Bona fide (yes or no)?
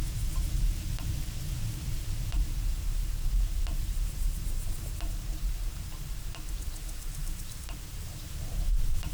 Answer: no